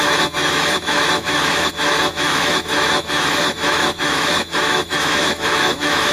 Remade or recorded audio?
remade